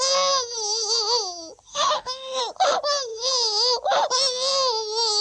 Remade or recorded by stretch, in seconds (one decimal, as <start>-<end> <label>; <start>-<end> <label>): 0.0-1.7 recorded; 1.7-2.4 remade; 2.4-5.2 recorded